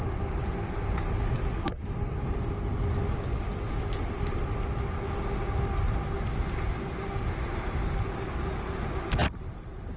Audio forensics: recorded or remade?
recorded